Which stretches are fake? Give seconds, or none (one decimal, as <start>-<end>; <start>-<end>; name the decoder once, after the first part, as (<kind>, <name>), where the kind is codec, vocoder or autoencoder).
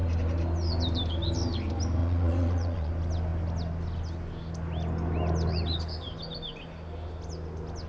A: 2.0-2.9 (vocoder, Vocos)